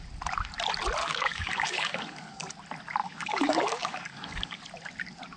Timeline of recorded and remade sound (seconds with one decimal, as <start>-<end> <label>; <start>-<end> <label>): 0.0-1.0 recorded; 1.0-2.5 remade; 2.5-3.0 recorded; 3.0-4.6 remade; 4.6-5.4 recorded